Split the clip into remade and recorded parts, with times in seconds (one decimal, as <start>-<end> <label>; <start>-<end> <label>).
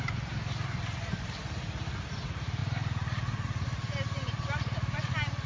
0.0-5.5 recorded